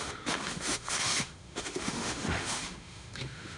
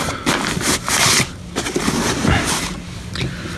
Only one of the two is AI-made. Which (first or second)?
first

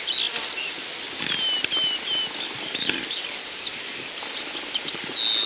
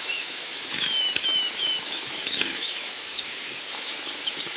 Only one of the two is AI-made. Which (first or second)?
second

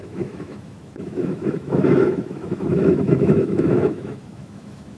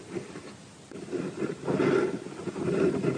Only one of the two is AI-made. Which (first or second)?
first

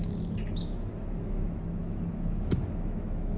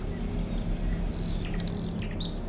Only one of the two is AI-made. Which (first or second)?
first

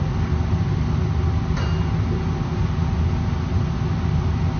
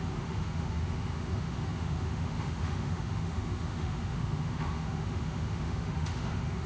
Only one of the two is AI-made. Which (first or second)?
second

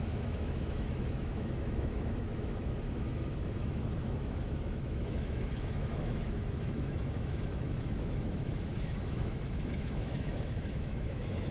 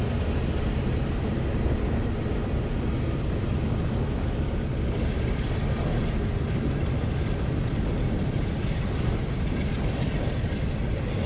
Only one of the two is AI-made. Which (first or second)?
first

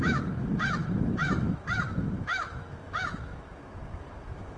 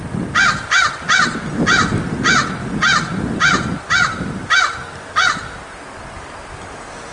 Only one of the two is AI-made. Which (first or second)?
first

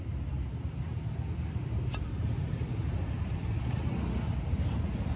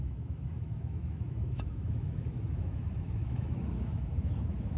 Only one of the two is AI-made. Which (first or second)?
second